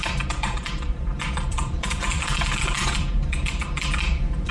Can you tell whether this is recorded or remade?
remade